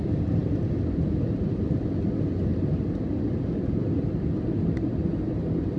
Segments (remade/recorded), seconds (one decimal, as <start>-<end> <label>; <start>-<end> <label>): 0.0-5.8 recorded